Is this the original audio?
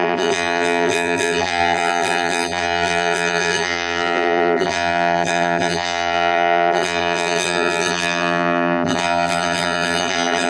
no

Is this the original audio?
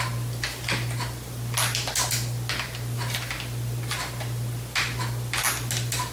yes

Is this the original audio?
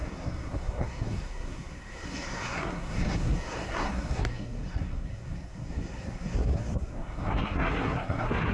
no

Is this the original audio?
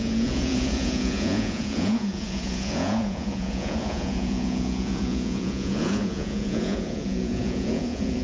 no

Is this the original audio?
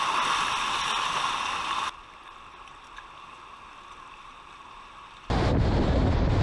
yes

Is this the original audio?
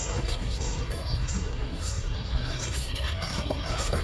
no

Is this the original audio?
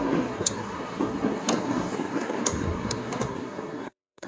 no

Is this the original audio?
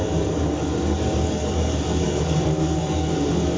no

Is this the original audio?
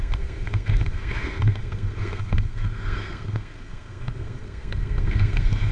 no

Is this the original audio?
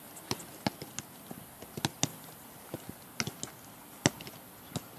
yes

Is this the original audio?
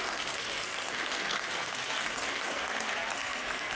no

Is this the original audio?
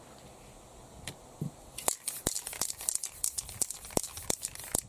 yes